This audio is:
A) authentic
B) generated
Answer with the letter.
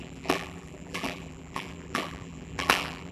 B